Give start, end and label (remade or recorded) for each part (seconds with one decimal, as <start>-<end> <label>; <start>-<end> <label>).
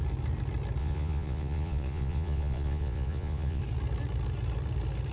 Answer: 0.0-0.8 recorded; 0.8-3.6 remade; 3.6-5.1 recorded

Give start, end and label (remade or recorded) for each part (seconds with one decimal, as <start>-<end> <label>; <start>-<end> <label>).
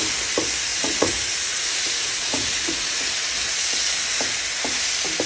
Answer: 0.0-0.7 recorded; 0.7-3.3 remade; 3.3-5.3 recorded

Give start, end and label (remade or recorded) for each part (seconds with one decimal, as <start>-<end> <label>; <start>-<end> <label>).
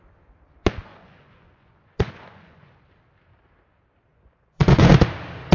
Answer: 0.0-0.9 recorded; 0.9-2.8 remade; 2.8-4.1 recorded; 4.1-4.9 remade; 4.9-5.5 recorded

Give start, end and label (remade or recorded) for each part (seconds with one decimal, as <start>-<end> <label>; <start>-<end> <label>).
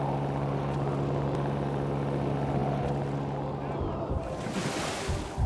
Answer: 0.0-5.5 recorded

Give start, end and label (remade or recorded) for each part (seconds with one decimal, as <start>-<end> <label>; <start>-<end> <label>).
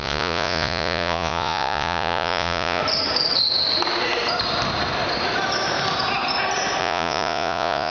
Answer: 0.0-2.8 remade; 2.8-6.8 recorded; 6.8-7.9 remade